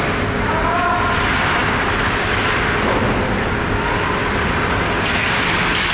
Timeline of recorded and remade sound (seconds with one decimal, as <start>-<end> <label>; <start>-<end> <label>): 0.0-5.9 recorded